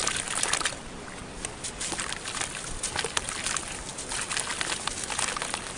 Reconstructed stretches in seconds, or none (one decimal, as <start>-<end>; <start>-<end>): none

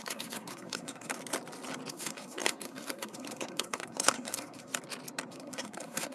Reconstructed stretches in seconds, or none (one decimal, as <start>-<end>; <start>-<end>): 0.0-1.2; 1.9-4.7; 5.3-6.1

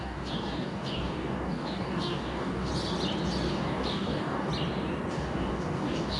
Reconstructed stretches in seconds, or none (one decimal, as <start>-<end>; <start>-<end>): 0.0-2.7; 3.5-4.5; 5.1-6.2

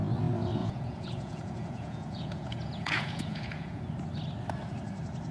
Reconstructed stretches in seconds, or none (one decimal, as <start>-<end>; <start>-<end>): 0.6-3.8

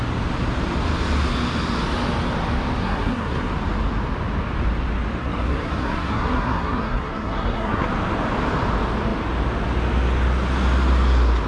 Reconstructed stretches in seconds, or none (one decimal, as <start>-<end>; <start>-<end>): 2.8-3.5; 5.2-7.9

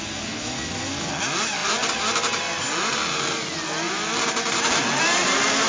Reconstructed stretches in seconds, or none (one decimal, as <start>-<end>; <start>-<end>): none